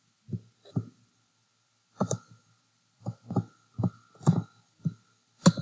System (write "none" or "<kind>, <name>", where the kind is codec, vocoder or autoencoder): none